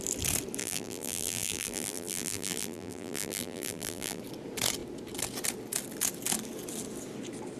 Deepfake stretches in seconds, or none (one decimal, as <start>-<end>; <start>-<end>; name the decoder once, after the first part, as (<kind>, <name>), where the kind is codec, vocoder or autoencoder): 0.6-4.2 (vocoder, BigVGAN v2)